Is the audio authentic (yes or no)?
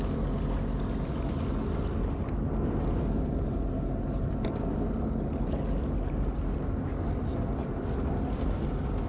yes